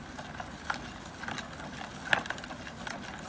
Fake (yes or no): no